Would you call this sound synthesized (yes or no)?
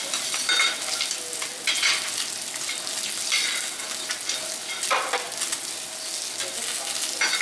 no